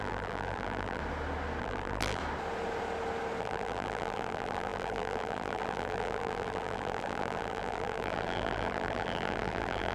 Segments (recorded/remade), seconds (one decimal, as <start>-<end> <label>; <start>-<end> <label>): 0.0-1.0 remade; 1.0-1.6 recorded; 1.6-2.2 remade; 2.2-3.4 recorded; 3.4-9.9 remade